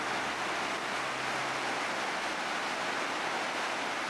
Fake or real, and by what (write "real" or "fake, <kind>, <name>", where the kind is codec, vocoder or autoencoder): real